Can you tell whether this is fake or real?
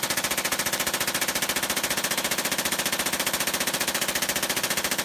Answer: real